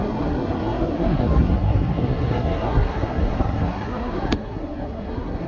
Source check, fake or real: fake